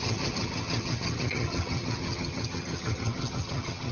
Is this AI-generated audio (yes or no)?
yes